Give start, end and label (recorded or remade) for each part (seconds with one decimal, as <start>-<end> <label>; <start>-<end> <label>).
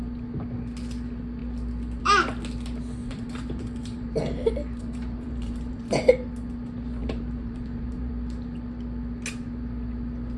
0.0-3.0 recorded; 3.0-6.0 remade; 6.0-7.0 recorded; 7.0-8.1 remade; 8.1-10.4 recorded